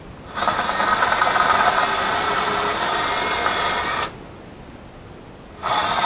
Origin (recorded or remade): recorded